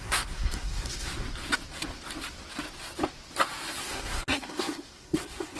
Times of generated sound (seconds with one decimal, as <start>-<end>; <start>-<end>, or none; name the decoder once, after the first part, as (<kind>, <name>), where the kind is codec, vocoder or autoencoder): 0.0-1.1 (codec, SNAC); 3.8-5.6